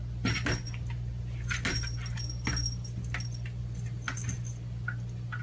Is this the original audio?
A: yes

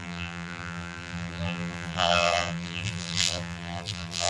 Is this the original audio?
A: no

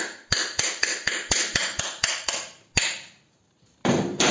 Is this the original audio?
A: no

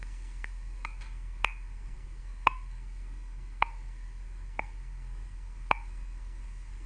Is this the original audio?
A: no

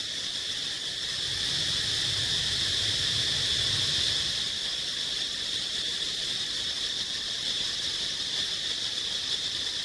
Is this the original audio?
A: yes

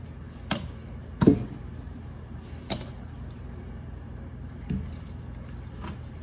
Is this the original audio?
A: yes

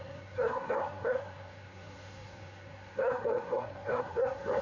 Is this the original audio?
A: no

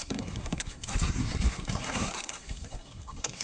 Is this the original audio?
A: no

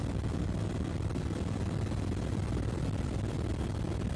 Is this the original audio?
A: yes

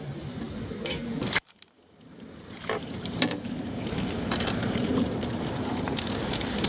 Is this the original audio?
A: no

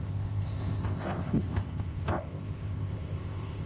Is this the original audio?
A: no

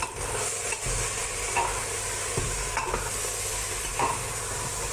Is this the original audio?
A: yes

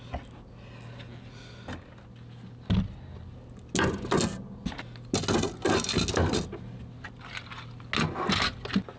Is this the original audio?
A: yes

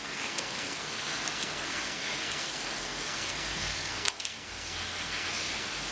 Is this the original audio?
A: no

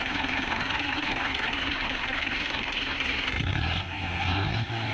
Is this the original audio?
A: no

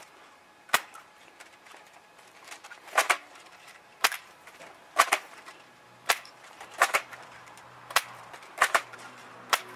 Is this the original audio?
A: no